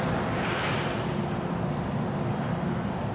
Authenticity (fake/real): real